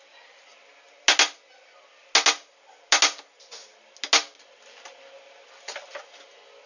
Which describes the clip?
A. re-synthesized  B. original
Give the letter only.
B